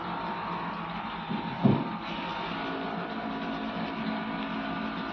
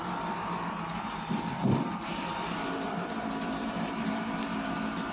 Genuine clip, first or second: first